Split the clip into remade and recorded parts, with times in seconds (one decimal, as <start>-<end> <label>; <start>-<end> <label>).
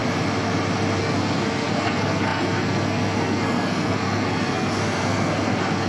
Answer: 0.0-1.0 recorded; 1.0-5.9 remade